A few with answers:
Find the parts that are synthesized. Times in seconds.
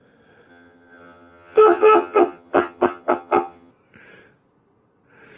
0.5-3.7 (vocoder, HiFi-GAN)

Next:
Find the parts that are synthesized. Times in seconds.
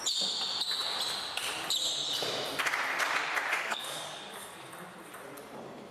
3.5-4.6 (codec, DAC)